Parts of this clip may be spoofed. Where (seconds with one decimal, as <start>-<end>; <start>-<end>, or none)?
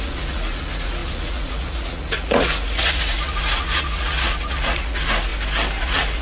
0.0-5.3; 5.8-6.2